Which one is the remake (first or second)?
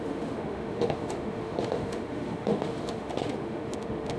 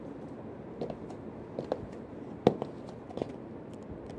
first